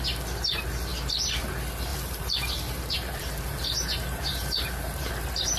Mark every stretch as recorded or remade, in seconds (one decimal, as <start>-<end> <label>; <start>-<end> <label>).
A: 0.0-1.9 recorded; 1.9-5.1 remade; 5.1-5.6 recorded